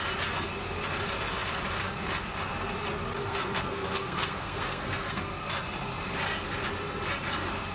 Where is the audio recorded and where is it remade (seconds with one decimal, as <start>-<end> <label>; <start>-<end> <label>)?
0.0-3.2 recorded; 3.2-5.3 remade; 5.3-7.7 recorded